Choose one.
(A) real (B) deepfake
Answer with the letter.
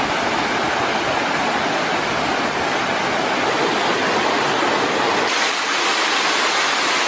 A